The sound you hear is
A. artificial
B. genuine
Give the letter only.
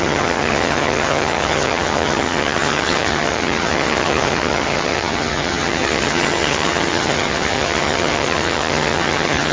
A